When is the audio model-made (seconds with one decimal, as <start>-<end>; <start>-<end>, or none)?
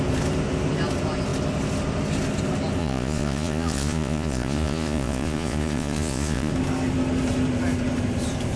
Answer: 2.8-6.5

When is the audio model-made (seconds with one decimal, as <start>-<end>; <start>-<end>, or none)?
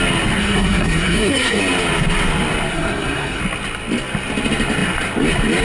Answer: 0.4-1.6; 2.7-3.4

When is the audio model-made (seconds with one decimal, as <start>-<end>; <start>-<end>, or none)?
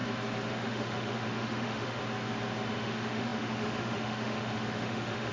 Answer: 0.5-2.0; 2.7-5.3